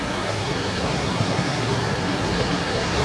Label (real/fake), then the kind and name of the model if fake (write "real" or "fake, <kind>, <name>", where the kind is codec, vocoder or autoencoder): fake, codec, SNAC